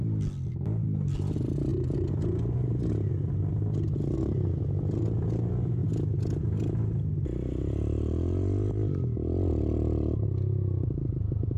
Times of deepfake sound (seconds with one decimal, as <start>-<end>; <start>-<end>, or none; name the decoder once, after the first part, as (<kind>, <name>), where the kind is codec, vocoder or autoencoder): none